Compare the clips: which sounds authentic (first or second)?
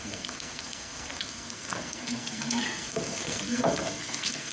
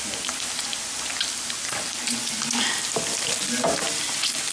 second